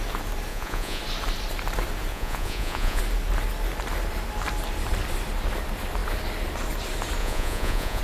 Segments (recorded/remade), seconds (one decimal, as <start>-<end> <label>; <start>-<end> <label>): 0.0-0.5 recorded; 0.5-1.0 remade; 1.0-2.1 recorded; 2.1-3.0 remade; 3.0-7.2 recorded; 7.2-8.0 remade

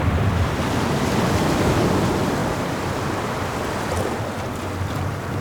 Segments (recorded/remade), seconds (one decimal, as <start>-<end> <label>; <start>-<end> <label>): 0.0-5.4 recorded

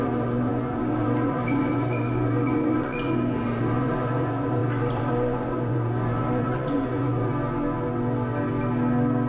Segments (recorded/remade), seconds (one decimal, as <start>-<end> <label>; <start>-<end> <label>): 0.0-7.3 remade; 7.3-9.3 recorded

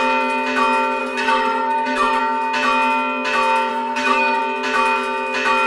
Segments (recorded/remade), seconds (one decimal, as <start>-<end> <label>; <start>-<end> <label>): 0.0-1.0 recorded; 1.0-2.2 remade; 2.2-3.7 recorded; 3.7-4.4 remade; 4.4-5.7 recorded

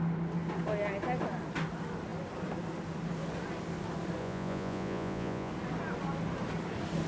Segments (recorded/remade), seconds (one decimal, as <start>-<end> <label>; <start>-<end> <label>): 0.0-4.2 recorded; 4.2-5.5 remade; 5.5-7.1 recorded

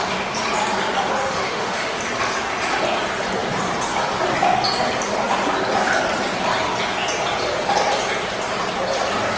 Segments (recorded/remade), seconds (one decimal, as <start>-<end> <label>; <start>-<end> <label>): 0.0-1.2 recorded; 1.2-2.0 remade; 2.0-9.4 recorded

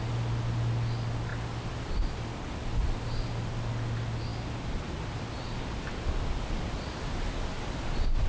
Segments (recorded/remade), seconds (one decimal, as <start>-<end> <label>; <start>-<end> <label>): 0.0-8.3 recorded

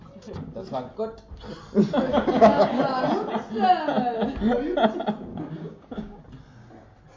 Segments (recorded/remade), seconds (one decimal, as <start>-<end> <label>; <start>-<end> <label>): 0.0-2.1 recorded; 2.1-2.8 remade; 2.8-5.3 recorded; 5.3-6.2 remade; 6.2-7.2 recorded